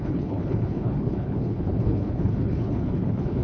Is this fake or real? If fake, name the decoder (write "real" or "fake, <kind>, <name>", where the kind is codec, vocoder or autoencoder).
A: fake, codec, HILCodec